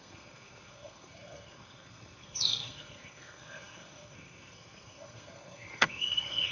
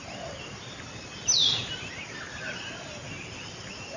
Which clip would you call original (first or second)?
second